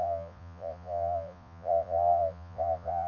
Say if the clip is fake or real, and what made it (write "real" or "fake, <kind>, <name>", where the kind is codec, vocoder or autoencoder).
fake, vocoder, Vocos